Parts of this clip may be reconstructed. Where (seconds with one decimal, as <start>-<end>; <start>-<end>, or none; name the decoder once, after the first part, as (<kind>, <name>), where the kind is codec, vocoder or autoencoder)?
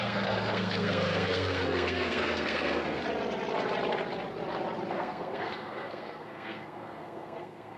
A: 0.0-3.0 (codec, SNAC); 4.9-7.8